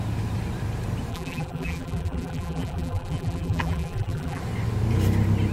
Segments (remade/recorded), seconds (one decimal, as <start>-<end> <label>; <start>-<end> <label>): 0.0-1.1 recorded; 1.1-4.4 remade; 4.4-5.5 recorded